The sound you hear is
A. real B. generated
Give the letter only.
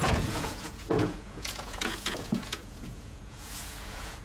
B